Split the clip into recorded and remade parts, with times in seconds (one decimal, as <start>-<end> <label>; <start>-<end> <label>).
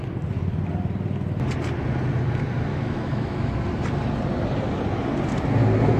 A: 0.0-2.7 recorded; 2.7-3.5 remade; 3.5-6.0 recorded